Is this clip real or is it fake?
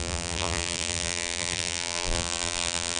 fake